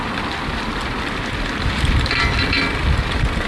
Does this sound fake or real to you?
real